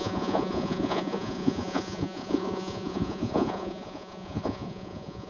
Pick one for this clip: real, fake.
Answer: fake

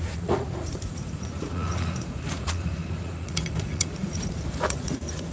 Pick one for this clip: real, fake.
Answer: fake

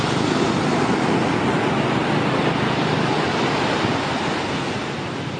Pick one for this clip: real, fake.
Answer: real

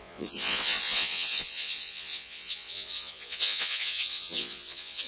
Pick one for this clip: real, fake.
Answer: fake